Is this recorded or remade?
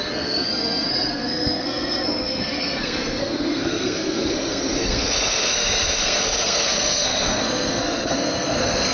remade